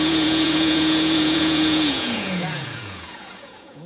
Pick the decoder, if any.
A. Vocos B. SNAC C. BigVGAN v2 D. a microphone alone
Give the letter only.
A